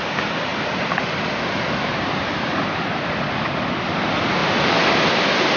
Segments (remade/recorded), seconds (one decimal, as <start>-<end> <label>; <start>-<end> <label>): 0.0-0.5 recorded; 0.5-3.9 remade; 3.9-4.4 recorded; 4.4-5.6 remade